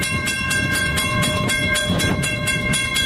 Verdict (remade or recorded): remade